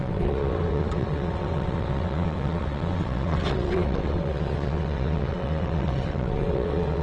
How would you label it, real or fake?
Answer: fake